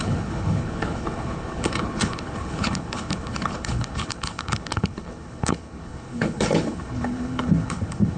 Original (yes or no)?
no